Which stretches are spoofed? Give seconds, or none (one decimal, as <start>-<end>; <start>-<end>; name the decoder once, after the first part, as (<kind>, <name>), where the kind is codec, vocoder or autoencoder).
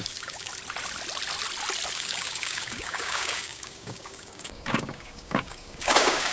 0.0-0.5 (codec, DAC); 1.9-6.3